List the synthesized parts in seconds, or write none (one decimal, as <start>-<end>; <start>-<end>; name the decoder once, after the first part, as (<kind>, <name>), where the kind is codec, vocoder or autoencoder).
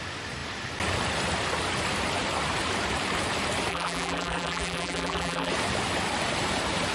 3.7-5.5 (vocoder, BigVGAN v2)